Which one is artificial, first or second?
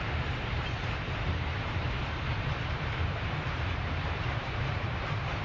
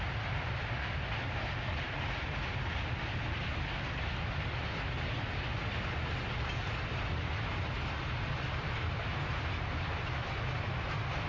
first